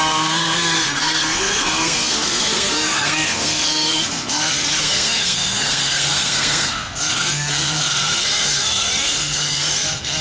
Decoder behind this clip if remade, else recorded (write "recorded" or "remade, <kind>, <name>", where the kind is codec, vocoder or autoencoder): remade, codec, SNAC